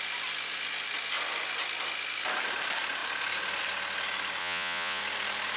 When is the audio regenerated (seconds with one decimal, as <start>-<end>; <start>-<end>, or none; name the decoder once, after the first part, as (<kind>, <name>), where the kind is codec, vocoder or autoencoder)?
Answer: 4.4-5.0 (vocoder, Vocos)

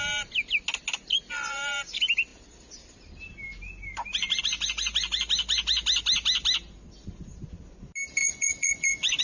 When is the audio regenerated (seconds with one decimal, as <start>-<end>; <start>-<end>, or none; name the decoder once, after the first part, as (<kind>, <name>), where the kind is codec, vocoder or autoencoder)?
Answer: 8.2-9.2 (vocoder, Vocos)

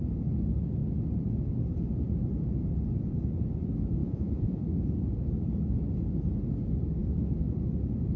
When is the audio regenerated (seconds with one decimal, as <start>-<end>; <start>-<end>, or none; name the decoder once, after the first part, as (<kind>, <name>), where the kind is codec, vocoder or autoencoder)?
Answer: 4.0-4.6 (vocoder, Vocos)

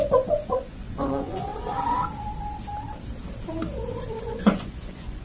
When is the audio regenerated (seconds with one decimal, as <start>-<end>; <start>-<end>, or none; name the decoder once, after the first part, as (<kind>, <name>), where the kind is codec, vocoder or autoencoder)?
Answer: 0.0-1.5 (vocoder, Vocos); 4.2-5.2

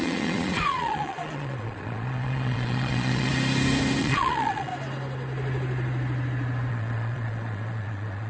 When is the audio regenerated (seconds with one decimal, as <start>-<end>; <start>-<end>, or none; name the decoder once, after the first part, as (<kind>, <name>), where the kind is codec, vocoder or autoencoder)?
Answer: 0.0-3.3 (vocoder, Vocos); 4.0-4.7; 6.7-8.3

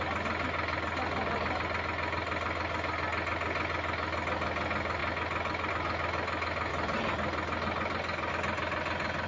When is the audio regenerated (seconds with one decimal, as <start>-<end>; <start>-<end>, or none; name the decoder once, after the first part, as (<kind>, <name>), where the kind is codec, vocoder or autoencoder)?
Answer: none